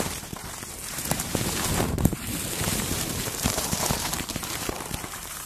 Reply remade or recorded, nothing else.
remade